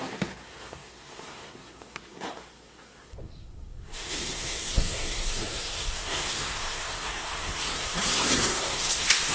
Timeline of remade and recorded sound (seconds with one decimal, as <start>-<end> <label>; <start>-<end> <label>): 0.0-9.3 remade

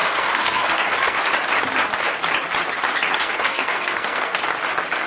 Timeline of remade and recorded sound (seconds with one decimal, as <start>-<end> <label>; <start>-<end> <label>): 0.0-1.2 remade; 1.2-3.2 recorded; 3.2-4.4 remade; 4.4-5.1 recorded

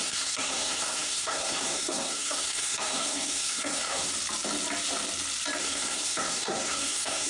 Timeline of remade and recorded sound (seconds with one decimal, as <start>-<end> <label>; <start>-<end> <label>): 0.0-4.1 remade; 4.1-5.6 recorded; 5.6-7.3 remade

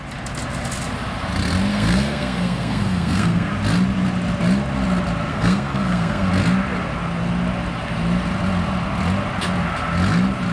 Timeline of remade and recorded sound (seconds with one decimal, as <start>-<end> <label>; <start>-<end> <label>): 0.0-1.7 recorded; 1.7-3.5 remade; 3.5-5.3 recorded; 5.3-6.3 remade; 6.3-10.5 recorded

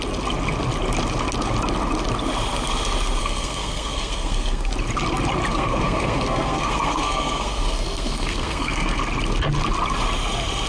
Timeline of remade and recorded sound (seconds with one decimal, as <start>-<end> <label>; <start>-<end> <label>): 0.0-3.2 recorded; 3.2-4.7 remade; 4.7-5.5 recorded; 5.5-9.0 remade; 9.0-10.7 recorded